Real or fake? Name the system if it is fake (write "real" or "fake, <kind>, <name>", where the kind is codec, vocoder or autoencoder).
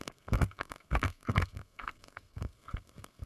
fake, codec, SNAC